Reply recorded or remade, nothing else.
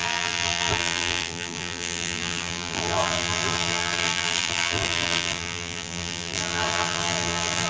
remade